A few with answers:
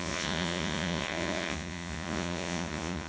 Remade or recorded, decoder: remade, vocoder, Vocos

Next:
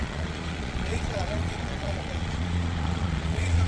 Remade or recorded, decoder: remade, vocoder, Vocos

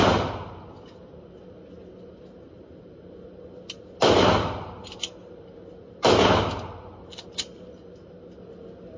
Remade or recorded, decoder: recorded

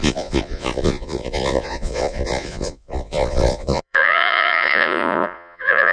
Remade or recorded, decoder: remade, vocoder, Vocos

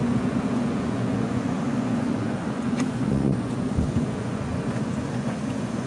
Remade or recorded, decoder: remade, vocoder, Vocos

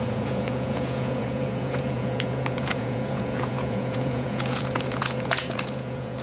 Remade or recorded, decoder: remade, vocoder, Vocos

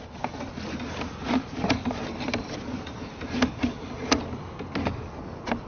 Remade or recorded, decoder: recorded